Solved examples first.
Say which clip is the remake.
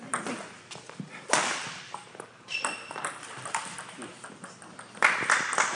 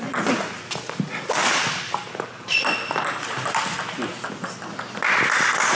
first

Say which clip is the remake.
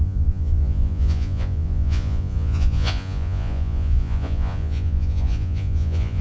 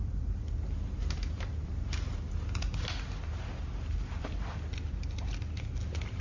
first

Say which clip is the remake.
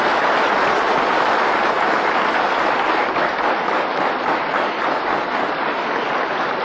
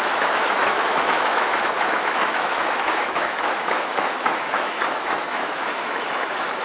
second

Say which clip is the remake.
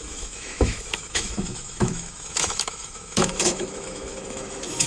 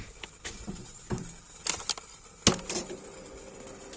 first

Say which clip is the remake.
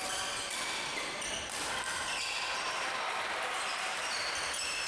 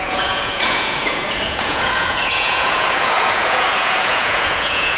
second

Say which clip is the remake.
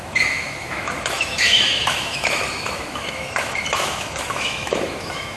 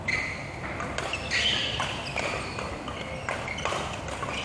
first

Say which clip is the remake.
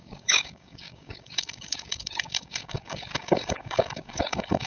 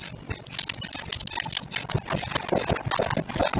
first